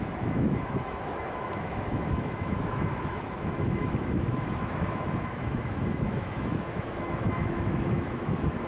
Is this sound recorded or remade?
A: remade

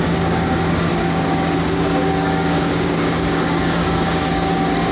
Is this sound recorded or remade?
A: remade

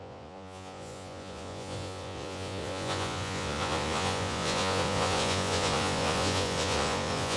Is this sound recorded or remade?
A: remade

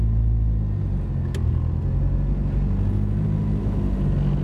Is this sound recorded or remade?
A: recorded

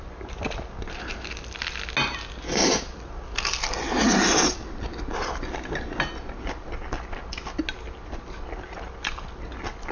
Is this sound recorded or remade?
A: recorded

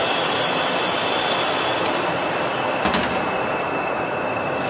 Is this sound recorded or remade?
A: recorded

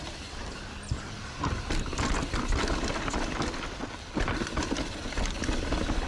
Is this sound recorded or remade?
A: recorded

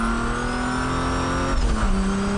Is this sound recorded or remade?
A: recorded